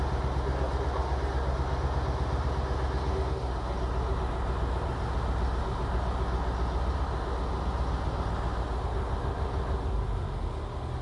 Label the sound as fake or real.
real